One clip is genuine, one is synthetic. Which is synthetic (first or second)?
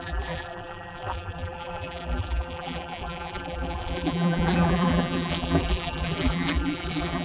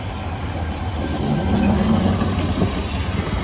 first